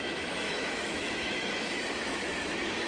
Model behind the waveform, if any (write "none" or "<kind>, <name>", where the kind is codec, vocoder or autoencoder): autoencoder, DAC-VAE